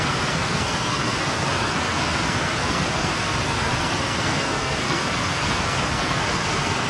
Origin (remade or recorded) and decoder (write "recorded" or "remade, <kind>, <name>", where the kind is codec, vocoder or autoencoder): remade, codec, SNAC